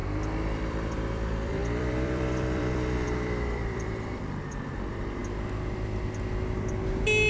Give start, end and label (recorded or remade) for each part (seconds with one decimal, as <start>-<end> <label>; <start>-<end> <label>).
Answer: 0.0-0.5 recorded; 0.5-5.2 remade; 5.2-7.3 recorded